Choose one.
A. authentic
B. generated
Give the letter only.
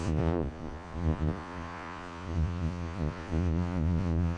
B